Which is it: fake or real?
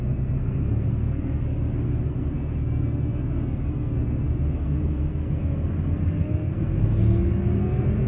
fake